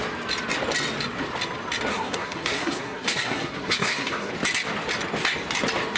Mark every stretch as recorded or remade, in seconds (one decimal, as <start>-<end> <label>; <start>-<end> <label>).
0.0-1.9 recorded; 1.9-4.3 remade; 4.3-6.0 recorded